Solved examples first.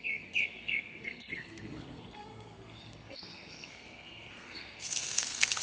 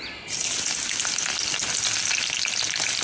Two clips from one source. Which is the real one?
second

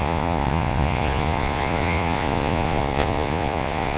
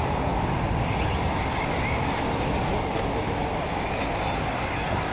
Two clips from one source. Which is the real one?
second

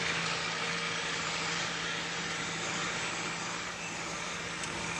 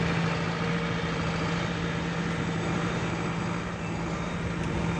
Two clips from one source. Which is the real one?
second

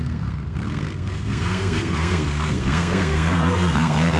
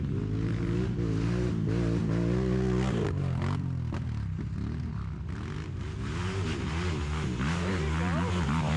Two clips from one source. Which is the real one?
second